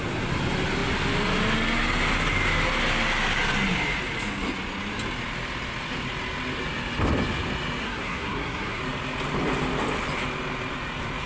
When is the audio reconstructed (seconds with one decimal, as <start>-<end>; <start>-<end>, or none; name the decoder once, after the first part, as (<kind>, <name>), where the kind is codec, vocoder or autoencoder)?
7.8-8.8 (codec, SNAC)